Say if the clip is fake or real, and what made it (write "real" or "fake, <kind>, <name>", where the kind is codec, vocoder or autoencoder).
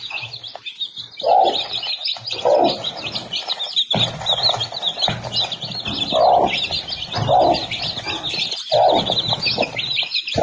real